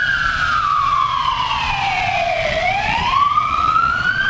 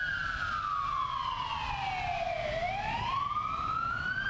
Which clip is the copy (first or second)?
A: first